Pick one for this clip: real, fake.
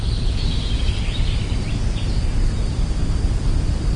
real